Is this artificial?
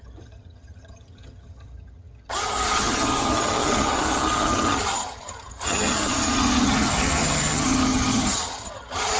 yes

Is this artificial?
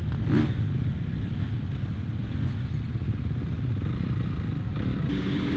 no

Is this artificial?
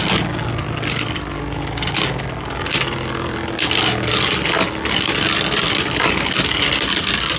no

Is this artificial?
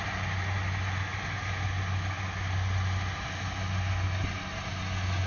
no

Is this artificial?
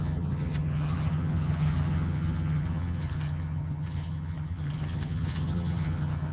yes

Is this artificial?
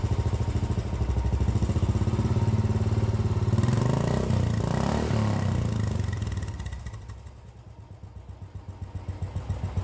no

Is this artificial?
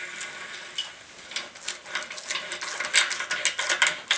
no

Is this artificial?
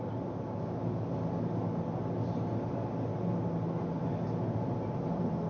no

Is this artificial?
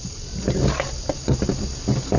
no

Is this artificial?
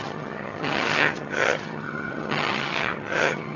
yes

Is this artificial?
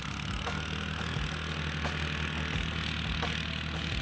no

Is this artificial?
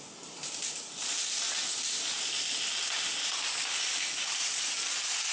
no